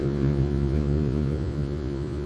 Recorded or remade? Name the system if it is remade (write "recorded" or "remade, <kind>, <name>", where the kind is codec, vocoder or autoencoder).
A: remade, vocoder, Vocos